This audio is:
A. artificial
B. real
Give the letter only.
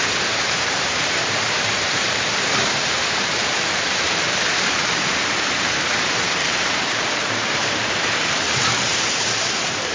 A